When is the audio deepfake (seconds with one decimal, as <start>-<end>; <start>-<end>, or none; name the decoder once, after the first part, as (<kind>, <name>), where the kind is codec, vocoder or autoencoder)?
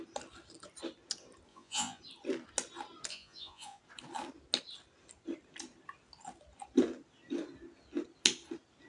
1.5-2.0 (vocoder, Vocos); 3.1-3.8